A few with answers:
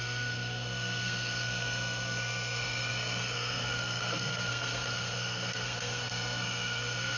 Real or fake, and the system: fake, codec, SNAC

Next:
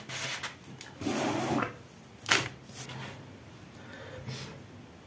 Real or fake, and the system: real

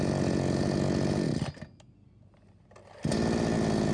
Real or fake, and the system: real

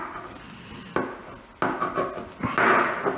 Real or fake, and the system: real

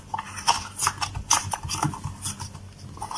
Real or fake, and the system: real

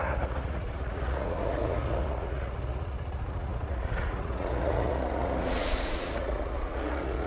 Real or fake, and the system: fake, vocoder, Vocos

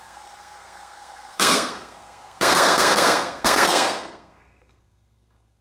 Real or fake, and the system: fake, codec, SNAC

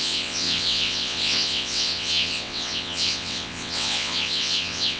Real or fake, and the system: fake, vocoder, WaveNeXt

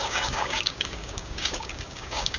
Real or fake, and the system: fake, codec, DAC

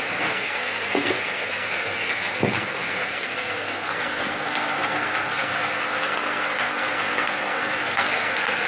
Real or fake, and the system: fake, codec, SNAC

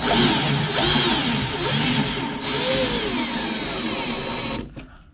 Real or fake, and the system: real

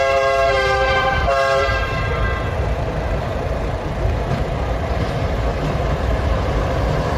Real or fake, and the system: fake, vocoder, BigVGAN v2